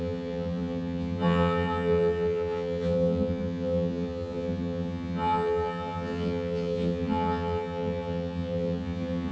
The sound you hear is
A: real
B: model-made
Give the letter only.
B